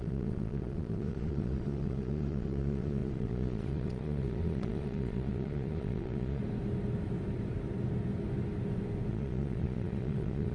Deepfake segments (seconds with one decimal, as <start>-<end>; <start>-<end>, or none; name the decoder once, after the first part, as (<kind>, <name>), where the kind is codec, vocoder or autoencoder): 0.0-6.4 (vocoder, Vocos); 9.1-10.5